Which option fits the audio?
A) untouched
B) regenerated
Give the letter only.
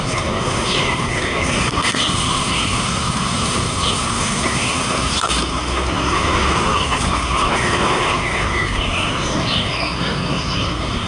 B